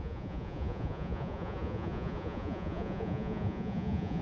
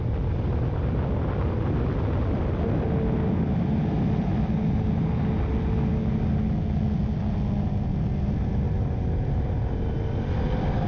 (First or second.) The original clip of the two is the second